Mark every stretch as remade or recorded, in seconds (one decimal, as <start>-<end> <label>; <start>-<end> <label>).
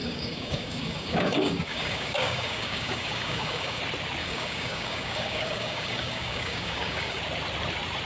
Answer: 0.0-3.8 remade; 3.8-4.2 recorded; 4.2-7.2 remade; 7.2-8.1 recorded